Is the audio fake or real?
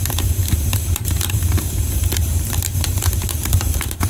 fake